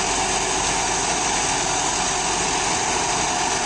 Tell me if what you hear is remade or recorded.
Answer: recorded